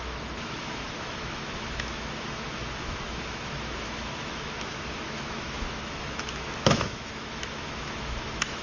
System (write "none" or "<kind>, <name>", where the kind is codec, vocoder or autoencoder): autoencoder, DAC-VAE